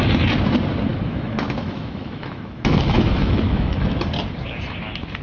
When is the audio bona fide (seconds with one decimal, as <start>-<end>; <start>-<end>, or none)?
0.0-0.9; 4.0-5.2